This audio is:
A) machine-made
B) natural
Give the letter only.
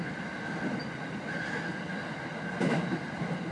B